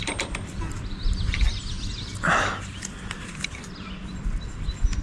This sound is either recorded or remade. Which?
remade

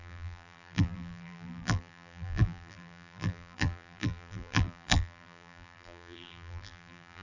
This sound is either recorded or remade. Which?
remade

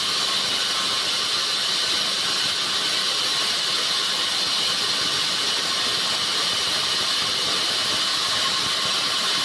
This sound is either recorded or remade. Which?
recorded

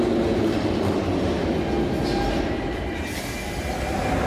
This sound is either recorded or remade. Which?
recorded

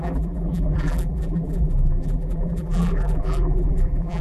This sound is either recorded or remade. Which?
remade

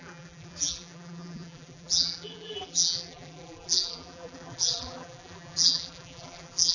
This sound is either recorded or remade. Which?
remade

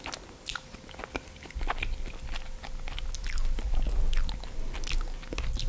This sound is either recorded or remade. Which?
recorded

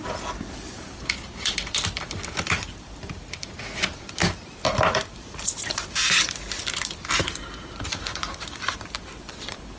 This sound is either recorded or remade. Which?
remade